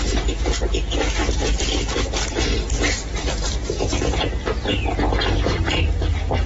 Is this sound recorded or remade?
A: recorded